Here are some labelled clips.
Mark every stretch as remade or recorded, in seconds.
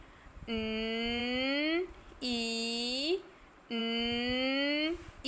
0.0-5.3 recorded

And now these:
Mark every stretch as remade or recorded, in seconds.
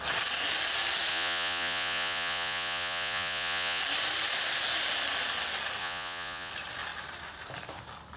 0.0-1.1 recorded; 1.1-3.8 remade; 3.8-5.8 recorded; 5.8-6.5 remade; 6.5-8.2 recorded